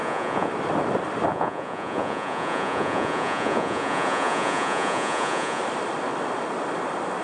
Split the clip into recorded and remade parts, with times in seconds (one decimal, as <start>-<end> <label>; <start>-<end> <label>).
0.0-0.5 remade; 0.5-1.3 recorded; 1.3-5.6 remade; 5.6-7.2 recorded